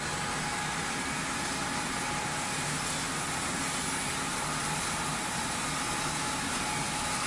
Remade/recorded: recorded